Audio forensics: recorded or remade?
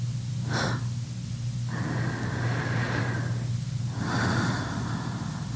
recorded